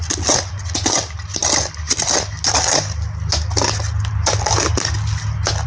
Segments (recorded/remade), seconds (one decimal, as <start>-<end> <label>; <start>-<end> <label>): 0.0-5.7 recorded